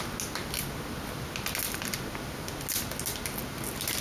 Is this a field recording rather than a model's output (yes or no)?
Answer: yes